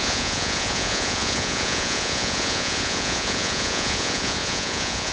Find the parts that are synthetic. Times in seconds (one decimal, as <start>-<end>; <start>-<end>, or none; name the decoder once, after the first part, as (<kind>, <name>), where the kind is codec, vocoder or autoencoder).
0.0-5.1 (vocoder, Vocos)

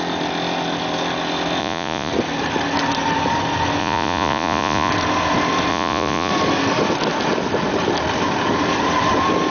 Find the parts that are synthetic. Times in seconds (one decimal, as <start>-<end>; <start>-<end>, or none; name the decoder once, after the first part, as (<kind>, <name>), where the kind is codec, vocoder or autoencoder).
1.6-2.1 (vocoder, Vocos); 3.8-4.9; 5.7-6.3

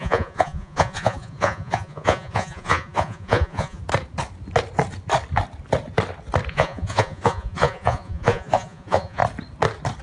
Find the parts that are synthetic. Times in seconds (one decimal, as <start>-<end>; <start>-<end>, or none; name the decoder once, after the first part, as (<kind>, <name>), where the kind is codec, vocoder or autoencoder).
0.0-3.8 (vocoder, Vocos); 6.5-9.2

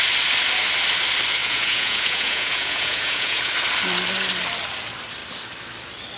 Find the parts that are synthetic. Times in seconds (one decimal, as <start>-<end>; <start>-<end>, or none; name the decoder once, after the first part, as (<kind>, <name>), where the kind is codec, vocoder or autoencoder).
1.4-3.5 (vocoder, Vocos)

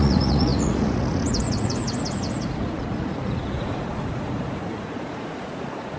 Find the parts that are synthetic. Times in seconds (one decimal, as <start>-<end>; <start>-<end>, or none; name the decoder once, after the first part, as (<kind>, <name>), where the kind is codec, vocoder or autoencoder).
0.0-6.0 (vocoder, Vocos)

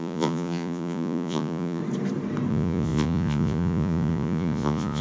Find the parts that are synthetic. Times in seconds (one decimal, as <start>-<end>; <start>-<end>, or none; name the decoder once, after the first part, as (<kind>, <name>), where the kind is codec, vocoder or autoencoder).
0.0-1.8 (vocoder, Vocos); 2.5-5.0